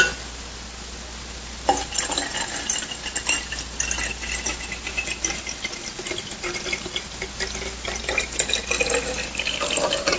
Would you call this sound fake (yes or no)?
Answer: no